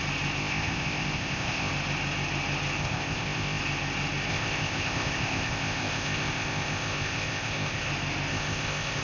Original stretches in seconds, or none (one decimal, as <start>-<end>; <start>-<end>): 0.0-0.4; 1.7-2.8; 3.6-4.3; 7.9-8.3